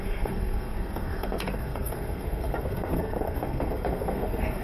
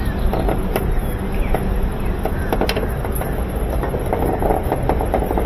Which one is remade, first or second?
first